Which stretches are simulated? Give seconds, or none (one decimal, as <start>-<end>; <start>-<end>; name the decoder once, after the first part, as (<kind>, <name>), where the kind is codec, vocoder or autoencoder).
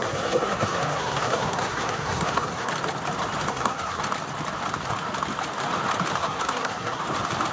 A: 0.0-2.7 (codec, SNAC); 3.5-4.0; 6.2-7.0